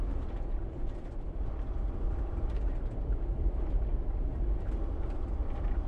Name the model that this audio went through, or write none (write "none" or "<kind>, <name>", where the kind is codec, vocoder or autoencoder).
vocoder, BigVGAN v2